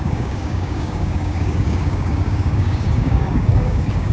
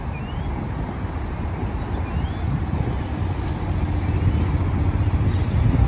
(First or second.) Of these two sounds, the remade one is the first